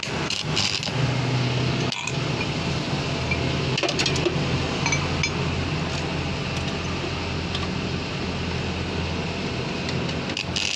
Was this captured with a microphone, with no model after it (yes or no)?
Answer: yes